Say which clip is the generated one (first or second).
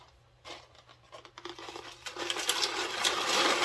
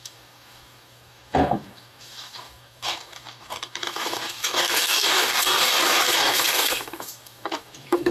second